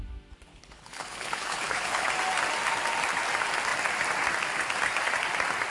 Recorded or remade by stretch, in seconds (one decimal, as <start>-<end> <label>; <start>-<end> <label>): 0.0-0.5 recorded; 0.5-2.1 remade; 2.1-5.7 recorded